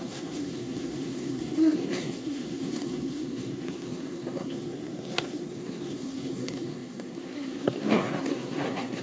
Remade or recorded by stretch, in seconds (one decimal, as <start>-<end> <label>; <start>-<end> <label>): 0.0-9.0 remade